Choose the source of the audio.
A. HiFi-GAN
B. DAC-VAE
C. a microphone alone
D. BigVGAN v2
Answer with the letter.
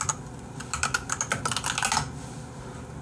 C